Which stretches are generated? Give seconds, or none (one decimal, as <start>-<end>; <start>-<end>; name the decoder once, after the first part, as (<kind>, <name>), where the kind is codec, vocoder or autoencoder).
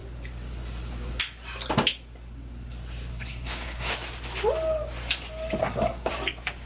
3.1-3.9 (codec, SNAC); 5.6-6.1